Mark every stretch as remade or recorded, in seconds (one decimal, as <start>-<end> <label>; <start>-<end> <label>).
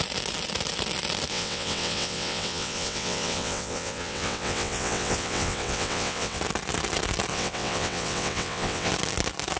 0.0-1.3 recorded; 1.3-6.4 remade; 6.4-7.3 recorded; 7.3-8.9 remade; 8.9-9.6 recorded